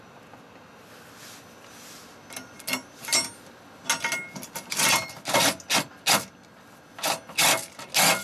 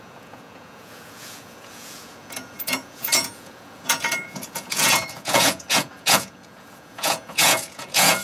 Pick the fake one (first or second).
second